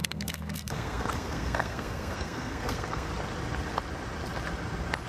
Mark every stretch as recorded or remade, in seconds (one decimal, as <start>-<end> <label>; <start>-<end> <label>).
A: 0.0-3.1 remade; 3.1-5.1 recorded